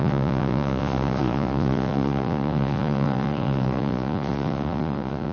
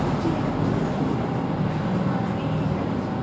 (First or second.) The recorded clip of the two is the second